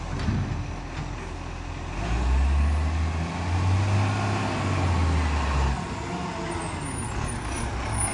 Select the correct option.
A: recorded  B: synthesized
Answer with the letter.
A